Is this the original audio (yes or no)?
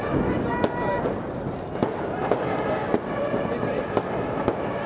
yes